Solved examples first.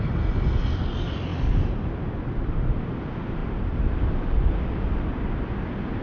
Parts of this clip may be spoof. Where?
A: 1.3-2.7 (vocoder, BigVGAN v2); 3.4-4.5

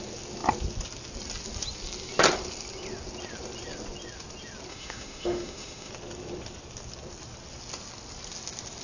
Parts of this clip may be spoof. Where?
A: 4.7-5.9 (autoencoder, DAC-VAE)

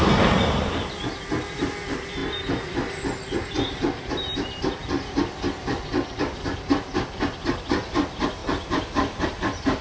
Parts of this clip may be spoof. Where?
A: none

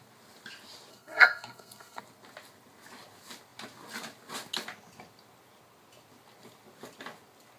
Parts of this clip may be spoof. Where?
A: 0.9-2.0 (codec, SNAC)

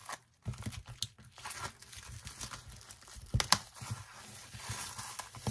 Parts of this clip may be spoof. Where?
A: none

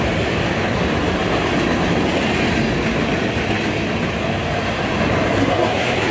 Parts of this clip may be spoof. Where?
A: 5.4-6.1 (codec, SNAC)

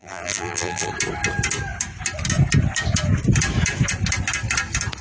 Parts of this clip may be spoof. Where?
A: 0.0-0.9 (vocoder, BigVGAN v2)